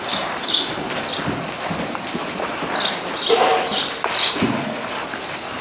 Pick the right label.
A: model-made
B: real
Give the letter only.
B